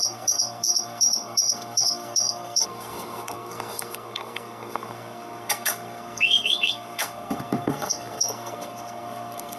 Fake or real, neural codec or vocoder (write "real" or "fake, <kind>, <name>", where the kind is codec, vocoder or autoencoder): fake, codec, SNAC